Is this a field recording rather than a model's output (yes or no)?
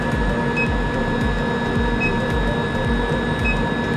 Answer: yes